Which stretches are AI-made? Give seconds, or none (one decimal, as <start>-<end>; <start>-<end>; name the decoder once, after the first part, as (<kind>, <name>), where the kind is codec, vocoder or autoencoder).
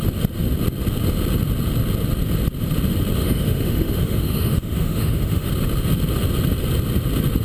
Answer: 3.2-5.5 (autoencoder, DAC-VAE)